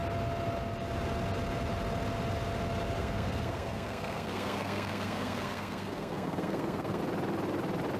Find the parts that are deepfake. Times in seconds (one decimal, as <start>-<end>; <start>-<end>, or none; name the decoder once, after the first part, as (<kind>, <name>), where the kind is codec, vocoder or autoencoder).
3.0-7.0 (codec, SNAC)